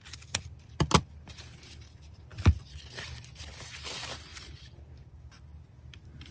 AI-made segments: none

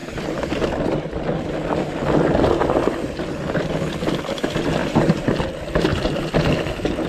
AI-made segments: 4.8-5.4 (vocoder, BigVGAN v2)

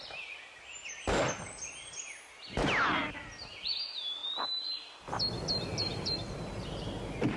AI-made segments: 5.7-6.8 (vocoder, BigVGAN v2)

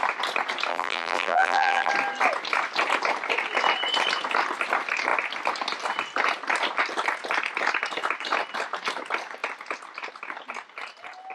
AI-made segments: 0.7-1.9 (vocoder, BigVGAN v2)

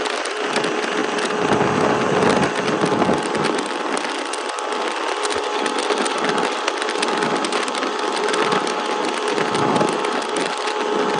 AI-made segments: none

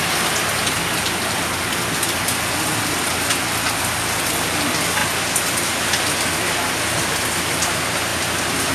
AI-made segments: 5.0-5.8 (vocoder, BigVGAN v2); 8.1-8.7

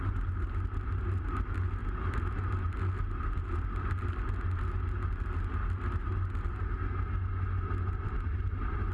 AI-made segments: none